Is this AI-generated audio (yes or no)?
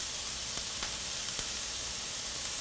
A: no